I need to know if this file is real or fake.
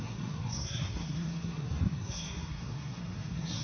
fake